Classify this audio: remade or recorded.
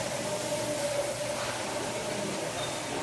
recorded